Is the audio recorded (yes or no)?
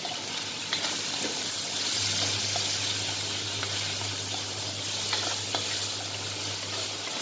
yes